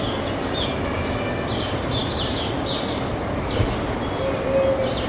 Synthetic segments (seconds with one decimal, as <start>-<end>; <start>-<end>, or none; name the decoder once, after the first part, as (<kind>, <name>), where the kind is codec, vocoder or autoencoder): none